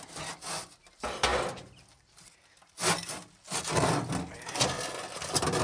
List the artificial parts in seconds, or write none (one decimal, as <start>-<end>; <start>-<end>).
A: none